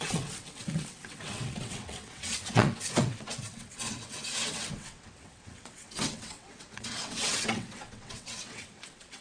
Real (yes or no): no